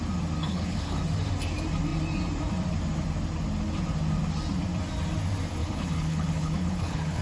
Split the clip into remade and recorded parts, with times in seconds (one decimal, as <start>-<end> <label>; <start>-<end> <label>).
0.0-0.4 recorded; 0.4-1.0 remade; 1.0-5.6 recorded; 5.6-7.2 remade